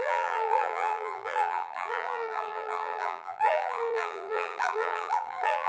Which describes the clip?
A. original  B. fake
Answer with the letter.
B